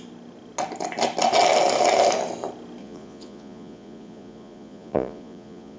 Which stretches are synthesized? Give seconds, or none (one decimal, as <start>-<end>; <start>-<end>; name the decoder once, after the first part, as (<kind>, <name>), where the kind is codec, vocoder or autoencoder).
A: 2.8-5.8 (vocoder, Vocos)